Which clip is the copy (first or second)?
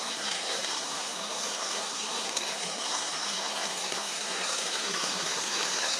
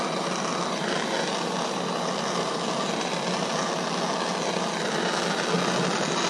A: first